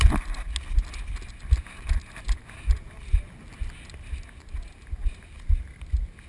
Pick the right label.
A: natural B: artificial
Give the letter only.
A